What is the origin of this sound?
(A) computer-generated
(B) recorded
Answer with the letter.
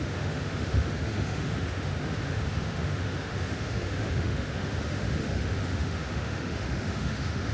A